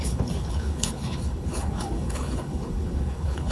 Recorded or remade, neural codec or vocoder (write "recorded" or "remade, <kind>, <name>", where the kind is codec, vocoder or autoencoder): remade, codec, HILCodec